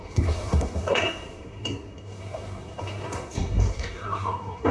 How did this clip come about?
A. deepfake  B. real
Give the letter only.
A